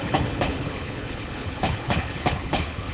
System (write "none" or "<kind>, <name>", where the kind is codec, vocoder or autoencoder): codec, HILCodec